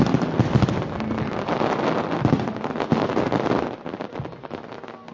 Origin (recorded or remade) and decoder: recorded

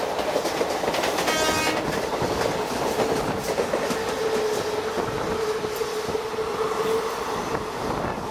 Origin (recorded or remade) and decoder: recorded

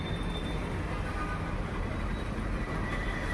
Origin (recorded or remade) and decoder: recorded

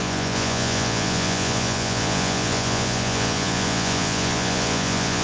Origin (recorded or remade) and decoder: remade, vocoder, Vocos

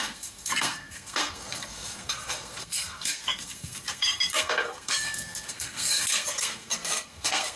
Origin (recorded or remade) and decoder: remade, codec, SNAC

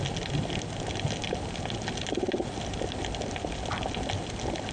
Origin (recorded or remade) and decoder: recorded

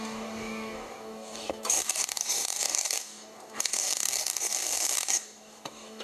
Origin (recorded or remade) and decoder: remade, codec, DAC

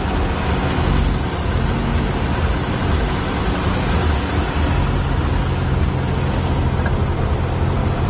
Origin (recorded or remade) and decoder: recorded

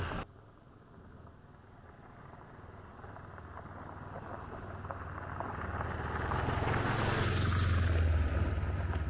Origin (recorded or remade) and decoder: recorded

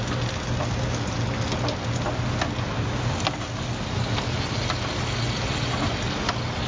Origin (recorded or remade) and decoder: recorded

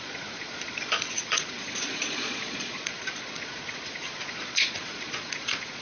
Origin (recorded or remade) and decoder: remade, vocoder, Vocos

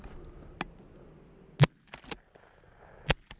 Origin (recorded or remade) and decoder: recorded